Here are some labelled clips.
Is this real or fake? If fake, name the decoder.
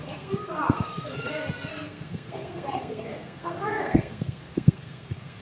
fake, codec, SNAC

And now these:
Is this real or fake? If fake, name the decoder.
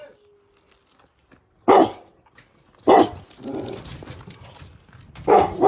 real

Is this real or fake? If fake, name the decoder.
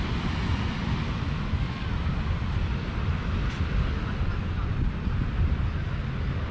real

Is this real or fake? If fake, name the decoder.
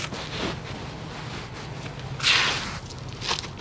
real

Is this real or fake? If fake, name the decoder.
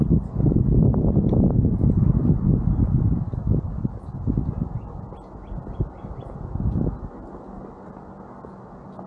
real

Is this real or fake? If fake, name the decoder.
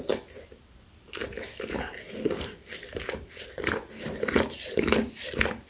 real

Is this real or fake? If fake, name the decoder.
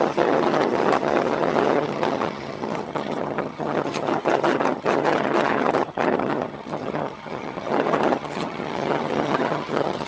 fake, vocoder, HiFi-GAN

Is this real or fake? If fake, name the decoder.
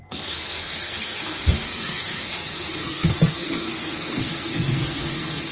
fake, codec, SNAC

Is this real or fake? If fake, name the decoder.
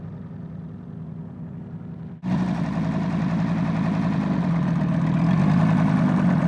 real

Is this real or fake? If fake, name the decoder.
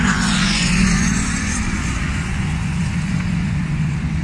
fake, vocoder, Vocos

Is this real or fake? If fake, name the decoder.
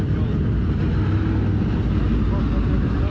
real